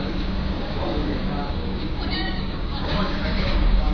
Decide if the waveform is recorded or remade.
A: remade